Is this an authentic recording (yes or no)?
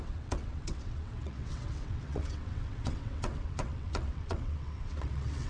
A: no